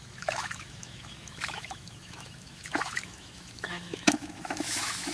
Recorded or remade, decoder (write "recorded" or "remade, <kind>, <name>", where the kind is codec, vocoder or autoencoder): remade, autoencoder, DAC-VAE